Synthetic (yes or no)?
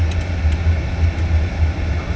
no